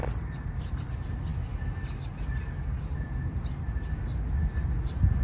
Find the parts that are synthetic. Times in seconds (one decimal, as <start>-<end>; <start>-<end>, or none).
0.0-0.6